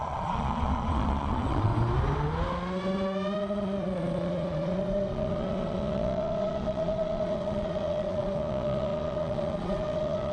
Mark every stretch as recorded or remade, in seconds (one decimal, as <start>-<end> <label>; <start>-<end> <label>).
0.0-1.7 remade; 1.7-3.4 recorded; 3.4-10.3 remade